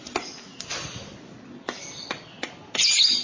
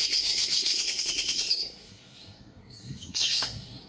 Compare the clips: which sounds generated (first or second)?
second